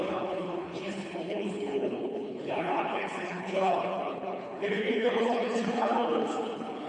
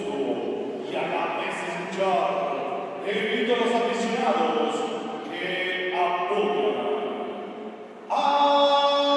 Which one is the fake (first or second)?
first